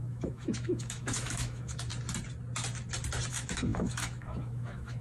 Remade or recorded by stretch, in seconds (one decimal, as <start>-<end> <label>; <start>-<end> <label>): 0.0-1.9 remade; 1.9-3.3 recorded; 3.3-5.0 remade